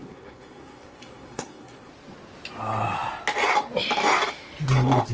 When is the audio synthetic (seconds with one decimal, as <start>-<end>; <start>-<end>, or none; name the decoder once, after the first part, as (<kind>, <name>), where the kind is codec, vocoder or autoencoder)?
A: 0.0-1.9 (codec, SNAC)